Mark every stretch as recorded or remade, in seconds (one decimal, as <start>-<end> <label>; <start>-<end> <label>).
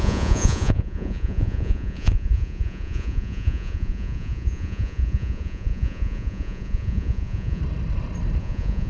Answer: 0.0-7.6 remade; 7.6-8.4 recorded; 8.4-8.9 remade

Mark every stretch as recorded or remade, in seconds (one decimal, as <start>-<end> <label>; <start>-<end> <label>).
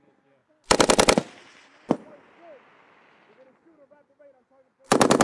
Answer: 0.0-5.2 recorded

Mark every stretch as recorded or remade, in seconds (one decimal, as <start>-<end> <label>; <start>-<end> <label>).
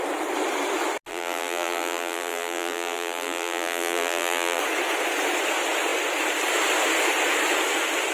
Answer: 0.0-1.1 recorded; 1.1-4.6 remade; 4.6-8.1 recorded